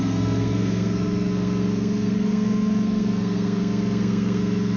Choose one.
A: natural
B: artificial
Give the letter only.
B